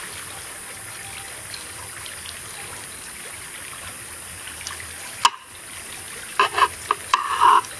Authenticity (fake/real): real